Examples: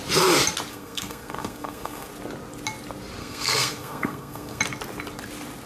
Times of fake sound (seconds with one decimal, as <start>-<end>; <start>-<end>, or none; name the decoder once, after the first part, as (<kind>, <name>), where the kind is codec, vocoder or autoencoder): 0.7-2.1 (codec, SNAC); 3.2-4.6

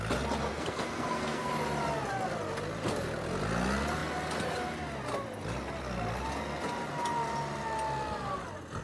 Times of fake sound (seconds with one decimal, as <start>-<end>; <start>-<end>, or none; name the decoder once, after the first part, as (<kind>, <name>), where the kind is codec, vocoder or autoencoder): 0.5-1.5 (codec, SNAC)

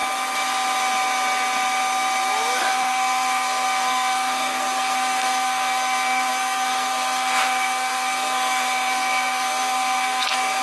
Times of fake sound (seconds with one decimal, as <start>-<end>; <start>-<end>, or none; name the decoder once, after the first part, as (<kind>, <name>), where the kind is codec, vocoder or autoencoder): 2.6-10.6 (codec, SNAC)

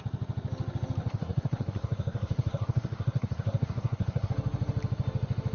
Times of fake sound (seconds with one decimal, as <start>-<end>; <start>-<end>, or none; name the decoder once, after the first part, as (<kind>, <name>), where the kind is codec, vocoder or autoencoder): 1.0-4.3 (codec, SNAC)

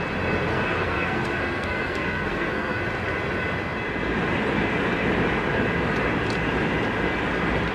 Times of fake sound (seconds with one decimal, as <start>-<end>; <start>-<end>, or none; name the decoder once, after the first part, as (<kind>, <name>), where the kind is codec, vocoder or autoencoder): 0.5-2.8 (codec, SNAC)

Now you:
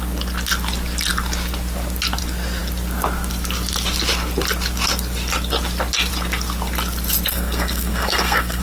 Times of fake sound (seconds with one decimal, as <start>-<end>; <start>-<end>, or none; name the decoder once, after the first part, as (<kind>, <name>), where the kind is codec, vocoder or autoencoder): 7.3-8.6 (codec, SNAC)